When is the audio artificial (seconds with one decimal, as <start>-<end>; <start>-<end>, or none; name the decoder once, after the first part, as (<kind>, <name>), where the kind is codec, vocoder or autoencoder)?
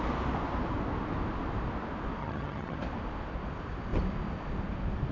2.2-2.8 (vocoder, HiFi-GAN)